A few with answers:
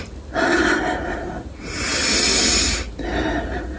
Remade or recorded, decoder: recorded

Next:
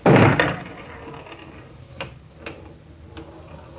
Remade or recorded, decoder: recorded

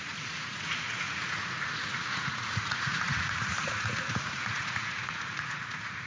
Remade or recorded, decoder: remade, vocoder, Vocos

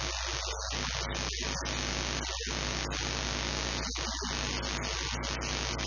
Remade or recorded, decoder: recorded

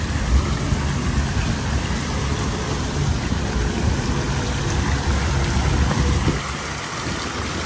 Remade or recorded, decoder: recorded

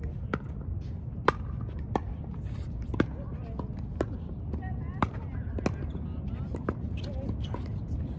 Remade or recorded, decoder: recorded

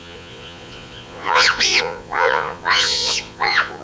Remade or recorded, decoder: remade, vocoder, Vocos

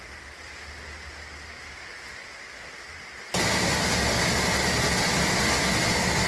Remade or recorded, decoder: recorded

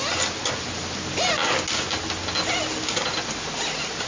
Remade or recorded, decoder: recorded